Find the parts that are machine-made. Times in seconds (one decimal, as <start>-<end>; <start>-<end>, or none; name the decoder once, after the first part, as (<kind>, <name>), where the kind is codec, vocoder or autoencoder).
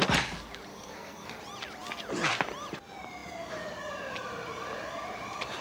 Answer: 0.7-1.4 (codec, SNAC)